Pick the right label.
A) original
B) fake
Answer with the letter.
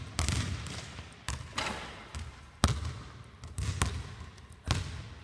A